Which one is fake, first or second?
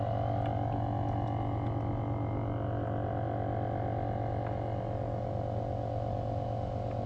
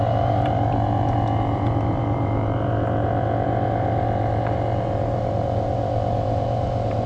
second